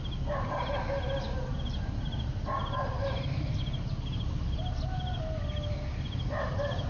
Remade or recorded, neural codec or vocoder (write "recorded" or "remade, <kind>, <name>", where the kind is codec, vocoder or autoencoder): recorded